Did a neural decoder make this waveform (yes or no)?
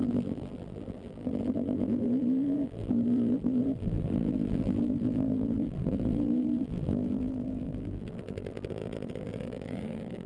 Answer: yes